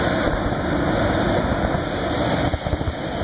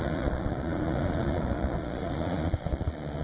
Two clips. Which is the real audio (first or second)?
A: first